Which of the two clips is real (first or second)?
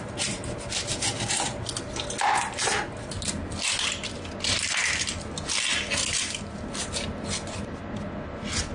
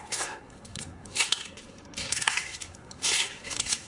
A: first